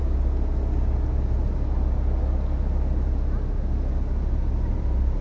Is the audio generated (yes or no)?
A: no